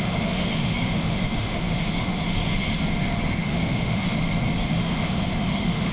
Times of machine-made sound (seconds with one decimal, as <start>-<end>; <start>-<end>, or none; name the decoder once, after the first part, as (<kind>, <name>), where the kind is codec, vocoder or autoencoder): 0.0-2.4 (autoencoder, DAC-VAE); 3.4-4.0; 4.5-5.9

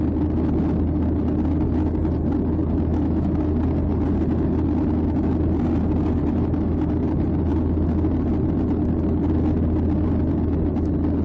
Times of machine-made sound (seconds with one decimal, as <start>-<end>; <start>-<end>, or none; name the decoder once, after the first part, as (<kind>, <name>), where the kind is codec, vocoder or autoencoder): 2.9-3.5 (autoencoder, DAC-VAE); 6.2-6.9

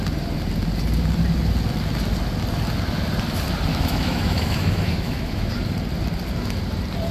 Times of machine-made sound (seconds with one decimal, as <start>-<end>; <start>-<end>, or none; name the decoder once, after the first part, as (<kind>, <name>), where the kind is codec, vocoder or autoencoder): 3.7-5.5 (autoencoder, DAC-VAE)

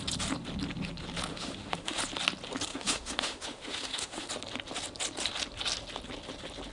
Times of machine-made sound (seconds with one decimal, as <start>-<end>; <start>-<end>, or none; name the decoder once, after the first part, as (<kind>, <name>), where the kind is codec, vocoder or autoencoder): 1.3-2.0 (autoencoder, DAC-VAE); 2.7-4.3